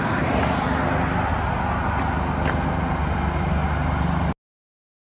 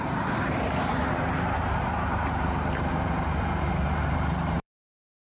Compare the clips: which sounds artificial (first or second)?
second